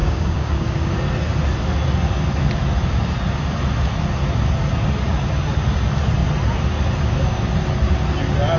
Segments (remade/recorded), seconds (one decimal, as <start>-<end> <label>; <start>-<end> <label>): 0.0-0.9 remade; 0.9-8.6 recorded